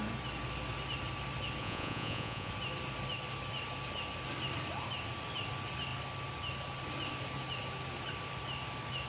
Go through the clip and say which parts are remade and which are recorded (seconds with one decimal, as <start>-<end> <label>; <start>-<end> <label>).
0.0-1.6 recorded; 1.6-2.5 remade; 2.5-9.1 recorded